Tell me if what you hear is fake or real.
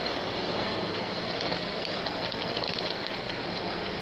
fake